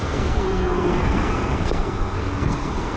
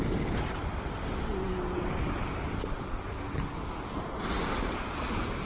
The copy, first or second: first